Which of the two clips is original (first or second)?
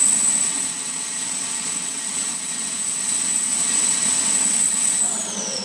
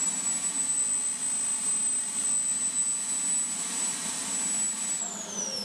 second